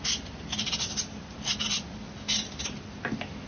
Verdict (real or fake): real